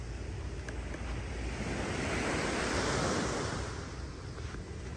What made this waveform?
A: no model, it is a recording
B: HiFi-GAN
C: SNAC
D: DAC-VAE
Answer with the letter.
A